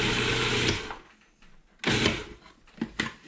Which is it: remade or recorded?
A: recorded